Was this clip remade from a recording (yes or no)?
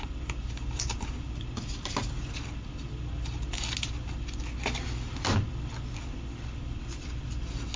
no